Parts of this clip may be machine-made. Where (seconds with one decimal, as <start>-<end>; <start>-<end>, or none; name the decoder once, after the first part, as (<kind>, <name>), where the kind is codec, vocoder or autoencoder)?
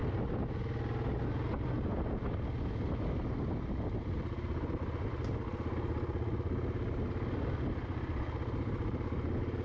none